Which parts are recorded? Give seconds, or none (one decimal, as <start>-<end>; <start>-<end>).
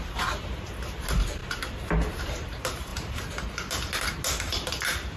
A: 0.0-5.2